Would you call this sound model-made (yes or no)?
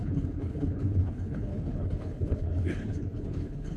yes